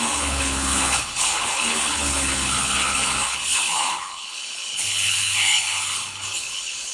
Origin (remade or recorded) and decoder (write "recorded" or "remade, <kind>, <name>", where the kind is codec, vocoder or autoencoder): remade, codec, HILCodec